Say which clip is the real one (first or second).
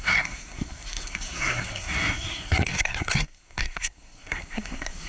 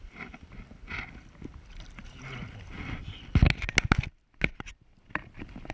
second